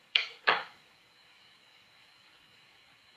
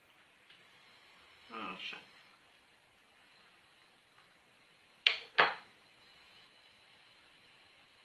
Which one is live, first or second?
second